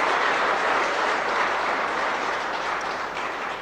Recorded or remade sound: remade